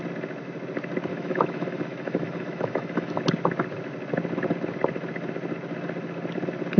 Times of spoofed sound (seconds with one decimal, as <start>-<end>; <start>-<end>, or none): 1.1-3.2